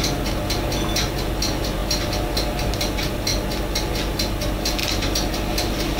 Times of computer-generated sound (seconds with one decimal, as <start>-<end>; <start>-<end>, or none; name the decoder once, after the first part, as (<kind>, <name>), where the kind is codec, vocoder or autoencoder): none